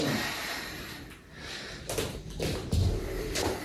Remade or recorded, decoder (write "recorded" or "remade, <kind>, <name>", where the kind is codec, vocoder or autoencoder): recorded